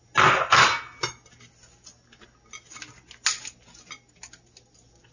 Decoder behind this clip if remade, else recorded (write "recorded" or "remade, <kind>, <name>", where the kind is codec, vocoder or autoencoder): recorded